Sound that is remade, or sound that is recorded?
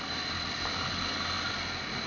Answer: recorded